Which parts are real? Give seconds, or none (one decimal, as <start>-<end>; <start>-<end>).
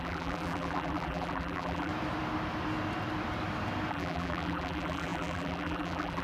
1.9-3.9